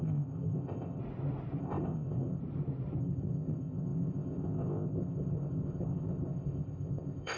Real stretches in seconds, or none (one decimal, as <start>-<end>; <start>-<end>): 1.0-1.6; 2.4-3.0